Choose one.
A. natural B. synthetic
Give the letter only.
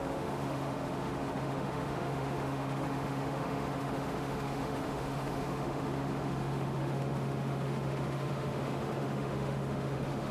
B